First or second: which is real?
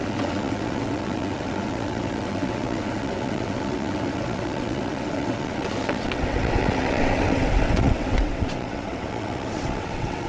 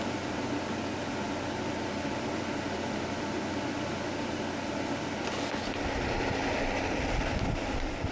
second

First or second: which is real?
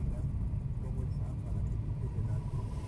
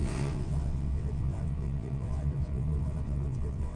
first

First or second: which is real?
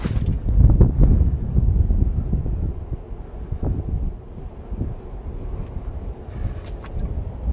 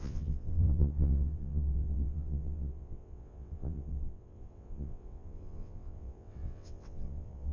first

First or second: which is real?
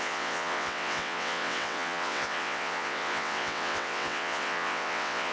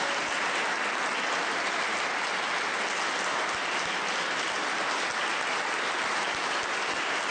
second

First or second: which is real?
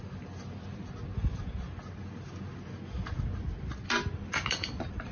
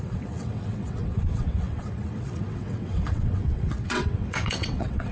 first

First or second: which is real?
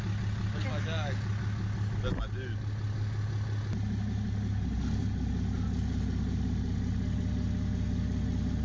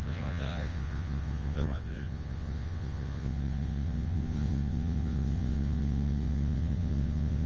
first